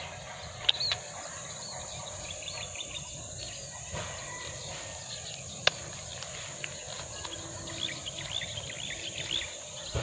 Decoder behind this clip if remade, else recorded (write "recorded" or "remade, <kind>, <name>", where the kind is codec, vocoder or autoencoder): recorded